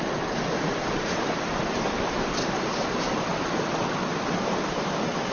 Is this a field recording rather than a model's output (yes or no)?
yes